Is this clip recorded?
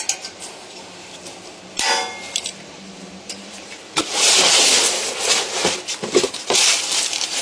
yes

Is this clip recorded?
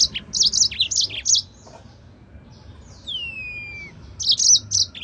yes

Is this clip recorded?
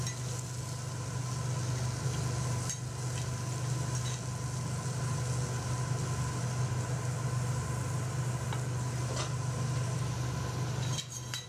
yes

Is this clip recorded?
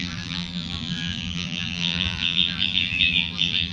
no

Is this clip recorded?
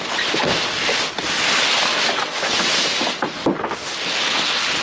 yes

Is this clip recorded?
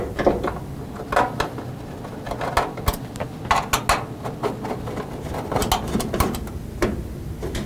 yes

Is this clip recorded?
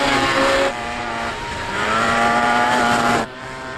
no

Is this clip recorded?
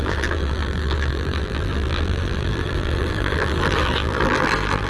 no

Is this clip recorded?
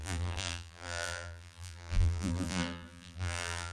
no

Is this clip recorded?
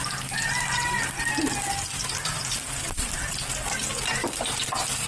yes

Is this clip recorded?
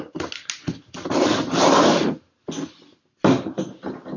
yes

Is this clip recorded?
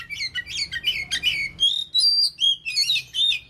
yes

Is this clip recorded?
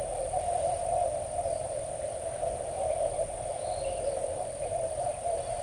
no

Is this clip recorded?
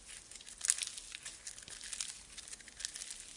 yes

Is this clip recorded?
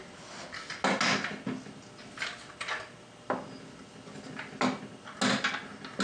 yes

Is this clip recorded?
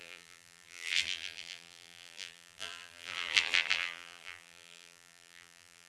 no